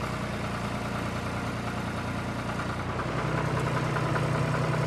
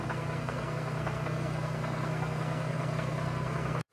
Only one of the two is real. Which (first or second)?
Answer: first